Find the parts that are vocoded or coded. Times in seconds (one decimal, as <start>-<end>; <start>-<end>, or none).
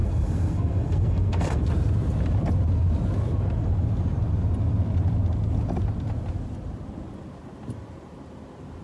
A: 0.0-1.6